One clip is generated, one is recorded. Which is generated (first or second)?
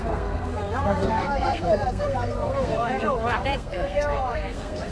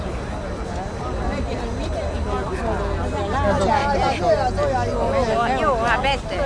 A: first